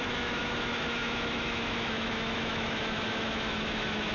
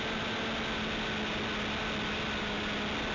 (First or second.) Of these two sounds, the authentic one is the second